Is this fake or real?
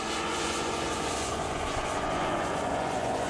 fake